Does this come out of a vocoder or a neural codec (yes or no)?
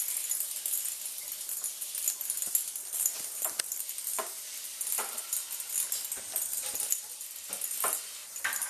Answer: no